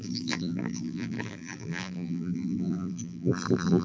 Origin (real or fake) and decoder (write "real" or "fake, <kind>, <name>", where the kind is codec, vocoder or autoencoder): fake, vocoder, BigVGAN v2